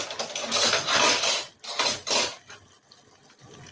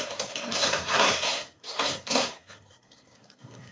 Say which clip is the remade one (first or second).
second